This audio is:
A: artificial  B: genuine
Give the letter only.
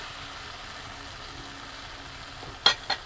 B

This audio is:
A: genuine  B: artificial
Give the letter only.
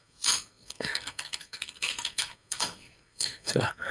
B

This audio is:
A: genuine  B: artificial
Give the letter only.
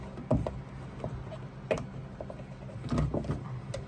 A